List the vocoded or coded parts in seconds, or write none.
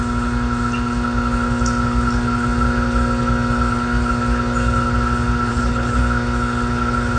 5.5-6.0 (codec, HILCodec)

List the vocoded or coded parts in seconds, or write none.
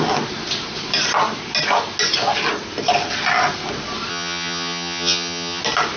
4.1-5.6 (vocoder, HiFi-GAN)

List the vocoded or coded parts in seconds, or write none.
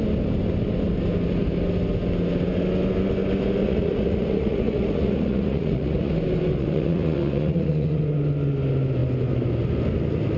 3.6-6.1 (vocoder, Vocos); 6.5-8.0